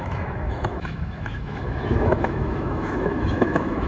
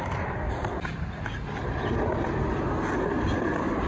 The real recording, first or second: second